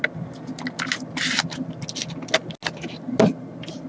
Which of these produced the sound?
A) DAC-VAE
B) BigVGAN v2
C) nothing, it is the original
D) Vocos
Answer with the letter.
C